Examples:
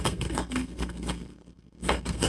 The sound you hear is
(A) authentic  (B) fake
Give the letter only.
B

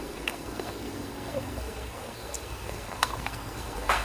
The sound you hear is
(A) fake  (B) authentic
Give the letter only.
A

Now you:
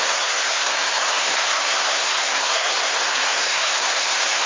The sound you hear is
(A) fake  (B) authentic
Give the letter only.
A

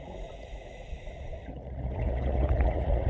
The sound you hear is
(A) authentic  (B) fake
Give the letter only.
B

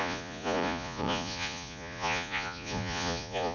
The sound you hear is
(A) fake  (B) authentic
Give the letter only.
A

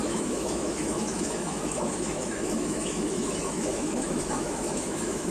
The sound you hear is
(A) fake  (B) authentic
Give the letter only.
A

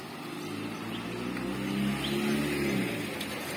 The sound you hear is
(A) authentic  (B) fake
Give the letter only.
A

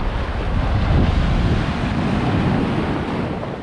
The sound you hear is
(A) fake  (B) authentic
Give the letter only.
B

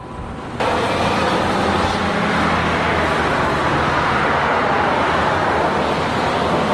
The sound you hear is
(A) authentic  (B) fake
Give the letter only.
A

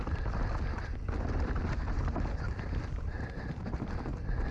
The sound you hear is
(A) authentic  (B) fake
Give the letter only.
A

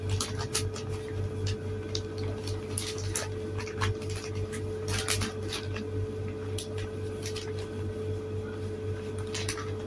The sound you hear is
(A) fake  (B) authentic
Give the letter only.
B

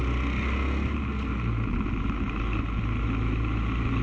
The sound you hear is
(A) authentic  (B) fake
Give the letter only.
A